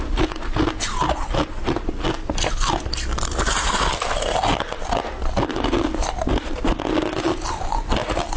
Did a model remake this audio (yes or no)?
no